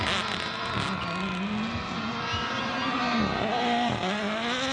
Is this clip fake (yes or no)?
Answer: no